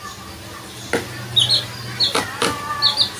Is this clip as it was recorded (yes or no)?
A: yes